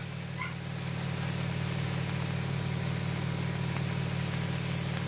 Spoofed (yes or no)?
no